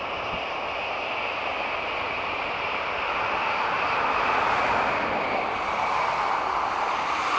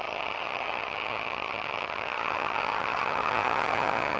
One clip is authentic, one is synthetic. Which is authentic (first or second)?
first